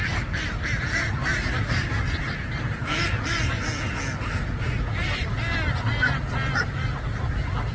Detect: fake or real real